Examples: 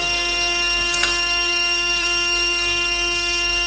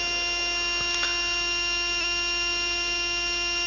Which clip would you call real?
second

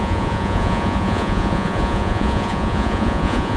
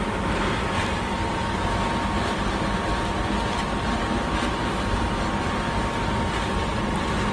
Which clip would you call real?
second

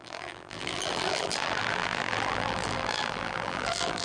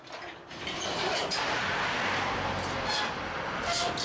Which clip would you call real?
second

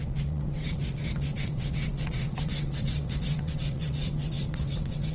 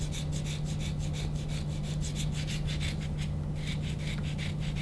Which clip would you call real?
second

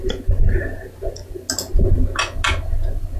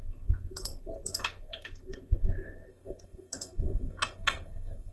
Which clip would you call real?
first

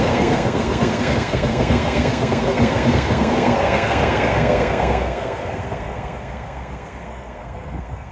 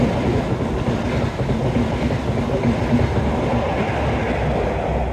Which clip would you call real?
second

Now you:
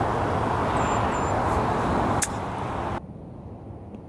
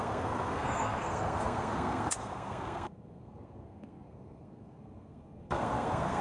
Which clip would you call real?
first